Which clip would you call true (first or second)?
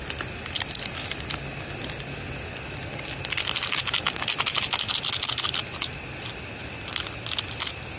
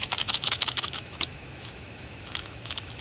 first